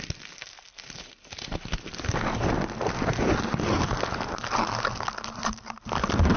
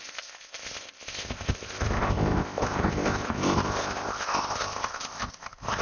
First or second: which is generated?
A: second